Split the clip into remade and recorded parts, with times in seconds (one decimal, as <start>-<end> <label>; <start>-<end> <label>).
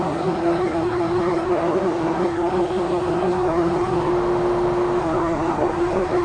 0.0-4.1 remade; 4.1-5.0 recorded; 5.0-6.2 remade